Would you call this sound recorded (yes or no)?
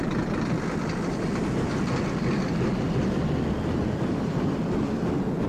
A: yes